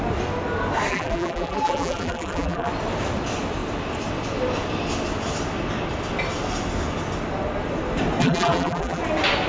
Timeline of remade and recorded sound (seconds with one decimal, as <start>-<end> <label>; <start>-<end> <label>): 0.0-0.9 recorded; 0.9-2.7 remade; 2.7-8.2 recorded; 8.2-9.0 remade; 9.0-9.5 recorded